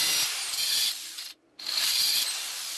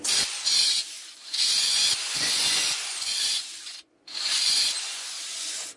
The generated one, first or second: second